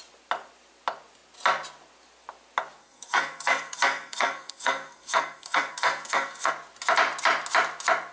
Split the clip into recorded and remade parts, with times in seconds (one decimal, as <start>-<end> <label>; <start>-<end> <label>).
0.0-2.8 recorded; 2.8-6.5 remade; 6.5-8.1 recorded